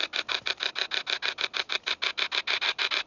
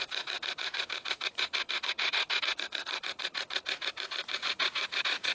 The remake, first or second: second